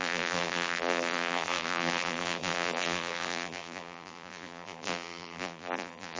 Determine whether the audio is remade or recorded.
remade